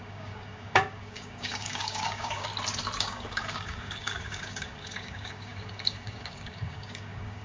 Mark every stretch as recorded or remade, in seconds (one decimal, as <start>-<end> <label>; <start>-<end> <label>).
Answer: 0.0-2.5 remade; 2.5-3.0 recorded; 3.0-7.4 remade